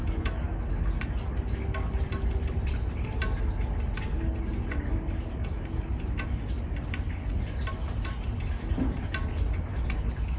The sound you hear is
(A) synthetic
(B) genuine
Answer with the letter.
B